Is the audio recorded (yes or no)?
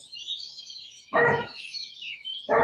no